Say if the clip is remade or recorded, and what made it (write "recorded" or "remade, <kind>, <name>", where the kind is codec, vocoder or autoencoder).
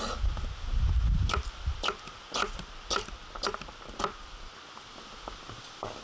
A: recorded